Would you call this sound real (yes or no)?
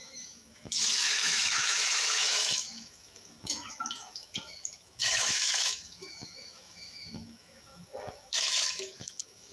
no